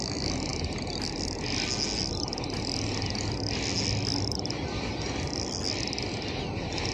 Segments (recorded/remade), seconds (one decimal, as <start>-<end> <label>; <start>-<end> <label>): 0.0-6.9 recorded